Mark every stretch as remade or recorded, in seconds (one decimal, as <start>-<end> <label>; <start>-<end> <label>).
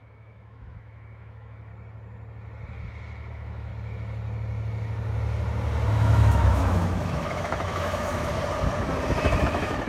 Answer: 0.0-1.7 remade; 1.7-3.3 recorded; 3.3-3.7 remade; 3.7-5.9 recorded; 5.9-8.3 remade; 8.3-9.4 recorded; 9.4-9.9 remade